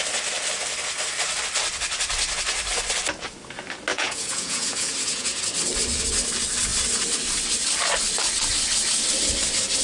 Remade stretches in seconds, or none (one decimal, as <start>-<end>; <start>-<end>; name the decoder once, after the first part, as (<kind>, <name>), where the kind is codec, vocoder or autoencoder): 3.9-5.4 (vocoder, Vocos)